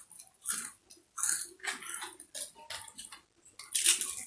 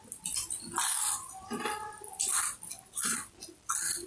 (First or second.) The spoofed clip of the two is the second